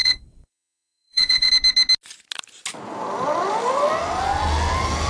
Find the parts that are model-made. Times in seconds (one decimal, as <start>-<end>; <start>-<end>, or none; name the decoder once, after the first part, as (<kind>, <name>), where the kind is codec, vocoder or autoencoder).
0.0-1.5 (vocoder, WaveNeXt)